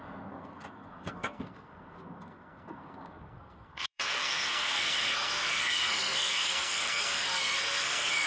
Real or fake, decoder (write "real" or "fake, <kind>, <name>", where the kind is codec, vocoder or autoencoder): fake, codec, SNAC